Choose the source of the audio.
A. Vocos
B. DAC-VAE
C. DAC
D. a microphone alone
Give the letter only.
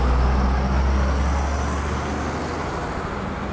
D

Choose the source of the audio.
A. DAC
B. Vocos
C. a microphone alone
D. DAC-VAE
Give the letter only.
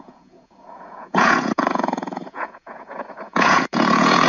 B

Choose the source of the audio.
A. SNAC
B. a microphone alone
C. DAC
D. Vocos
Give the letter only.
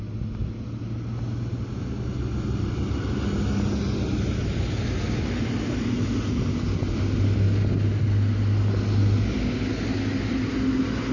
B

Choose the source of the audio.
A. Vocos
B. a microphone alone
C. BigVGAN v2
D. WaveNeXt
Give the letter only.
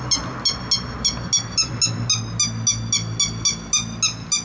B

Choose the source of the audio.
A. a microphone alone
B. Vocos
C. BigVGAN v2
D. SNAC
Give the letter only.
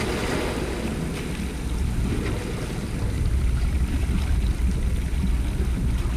A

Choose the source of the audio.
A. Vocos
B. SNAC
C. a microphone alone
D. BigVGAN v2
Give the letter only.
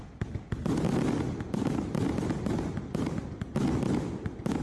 C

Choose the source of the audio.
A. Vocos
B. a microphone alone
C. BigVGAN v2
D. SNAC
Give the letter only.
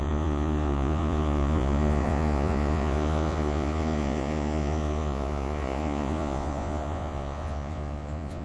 A